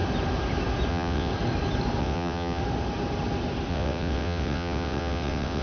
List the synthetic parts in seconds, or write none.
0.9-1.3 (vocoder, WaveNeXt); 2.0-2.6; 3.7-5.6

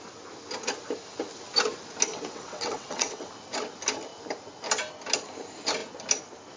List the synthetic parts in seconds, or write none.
2.1-3.3 (vocoder, WaveNeXt)

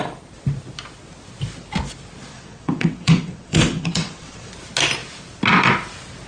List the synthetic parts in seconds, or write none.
2.3-4.5 (vocoder, WaveNeXt)

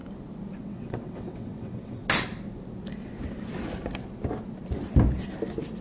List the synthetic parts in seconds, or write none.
0.6-2.0 (vocoder, WaveNeXt)

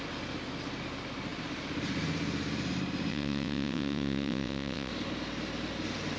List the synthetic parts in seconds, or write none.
3.1-4.9 (vocoder, WaveNeXt)

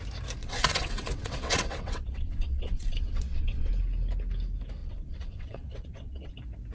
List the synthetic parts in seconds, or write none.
0.4-3.7 (vocoder, WaveNeXt); 4.8-6.3